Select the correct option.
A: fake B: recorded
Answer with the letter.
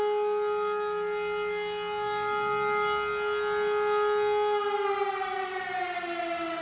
B